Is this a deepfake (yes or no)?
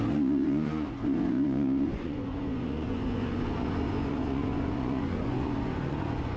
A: yes